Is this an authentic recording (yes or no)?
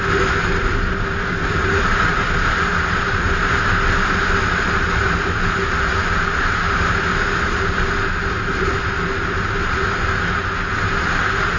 yes